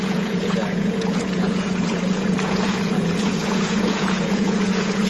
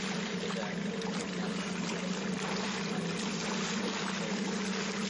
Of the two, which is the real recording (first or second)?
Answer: second